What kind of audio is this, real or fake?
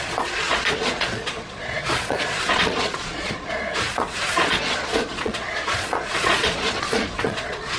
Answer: fake